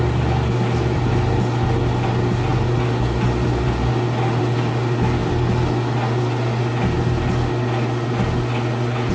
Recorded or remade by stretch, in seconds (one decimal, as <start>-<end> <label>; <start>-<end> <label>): 0.0-9.1 recorded